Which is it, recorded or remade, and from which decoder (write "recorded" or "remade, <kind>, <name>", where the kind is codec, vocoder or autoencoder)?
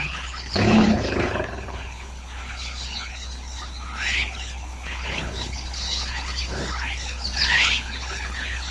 remade, codec, HILCodec